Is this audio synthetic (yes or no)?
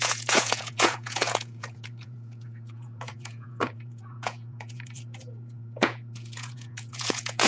yes